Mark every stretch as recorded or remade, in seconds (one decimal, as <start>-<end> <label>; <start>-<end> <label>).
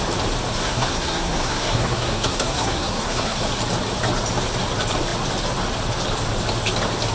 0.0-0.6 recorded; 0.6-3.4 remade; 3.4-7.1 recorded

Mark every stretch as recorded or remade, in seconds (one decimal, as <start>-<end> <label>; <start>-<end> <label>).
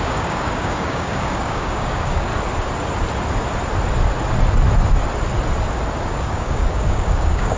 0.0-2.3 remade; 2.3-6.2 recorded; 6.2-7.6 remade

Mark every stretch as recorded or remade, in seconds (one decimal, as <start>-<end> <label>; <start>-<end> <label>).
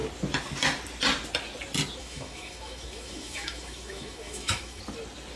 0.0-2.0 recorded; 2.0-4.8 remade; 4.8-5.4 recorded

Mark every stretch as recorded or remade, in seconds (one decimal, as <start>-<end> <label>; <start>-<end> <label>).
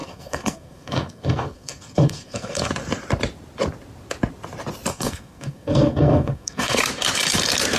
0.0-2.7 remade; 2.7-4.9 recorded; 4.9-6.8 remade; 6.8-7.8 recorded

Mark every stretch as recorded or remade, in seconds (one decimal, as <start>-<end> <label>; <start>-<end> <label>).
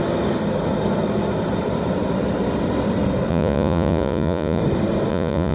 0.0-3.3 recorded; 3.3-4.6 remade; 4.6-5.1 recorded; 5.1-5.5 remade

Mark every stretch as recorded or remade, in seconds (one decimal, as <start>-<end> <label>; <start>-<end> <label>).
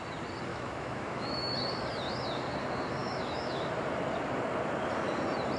0.0-0.5 recorded; 0.5-1.5 remade; 1.5-3.0 recorded; 3.0-3.7 remade; 3.7-5.6 recorded